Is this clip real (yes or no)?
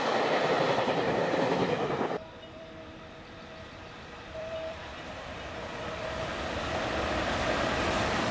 no